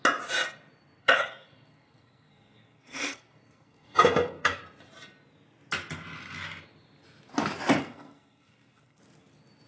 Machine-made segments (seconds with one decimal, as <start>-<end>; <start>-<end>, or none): 1.0-4.6; 7.8-9.0